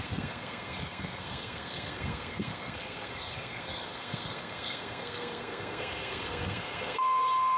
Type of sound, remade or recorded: remade